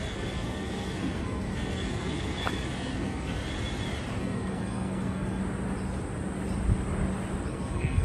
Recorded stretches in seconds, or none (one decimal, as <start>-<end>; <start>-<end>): 3.4-4.2; 5.4-7.5

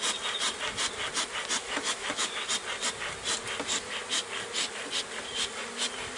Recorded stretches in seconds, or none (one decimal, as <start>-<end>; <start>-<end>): 0.0-1.6; 2.3-6.2

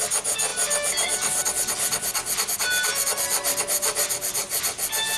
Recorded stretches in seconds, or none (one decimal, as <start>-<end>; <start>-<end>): 0.0-5.2

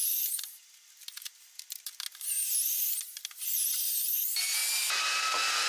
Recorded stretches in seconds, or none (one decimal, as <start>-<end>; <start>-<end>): 0.0-5.7